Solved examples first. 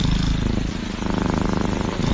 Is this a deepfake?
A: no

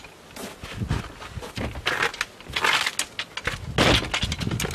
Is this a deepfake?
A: no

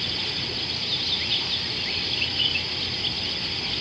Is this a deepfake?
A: no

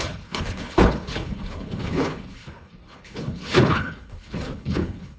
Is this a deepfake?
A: yes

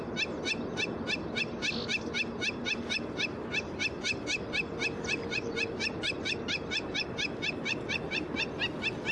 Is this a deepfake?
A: no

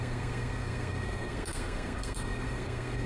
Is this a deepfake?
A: yes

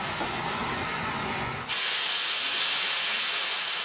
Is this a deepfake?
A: yes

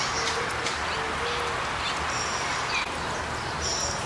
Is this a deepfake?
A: no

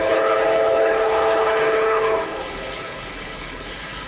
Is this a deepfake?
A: yes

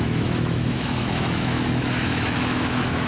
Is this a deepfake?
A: yes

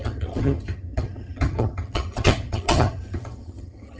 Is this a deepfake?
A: yes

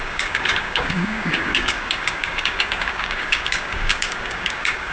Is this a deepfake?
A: yes